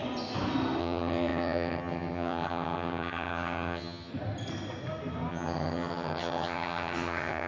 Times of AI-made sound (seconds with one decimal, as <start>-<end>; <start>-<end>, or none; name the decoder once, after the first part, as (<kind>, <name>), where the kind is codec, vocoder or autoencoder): 0.8-4.1 (vocoder, HiFi-GAN); 5.3-7.5